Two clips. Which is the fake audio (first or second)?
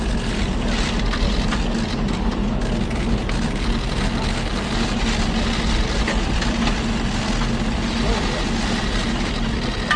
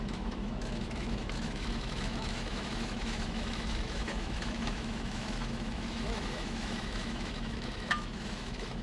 second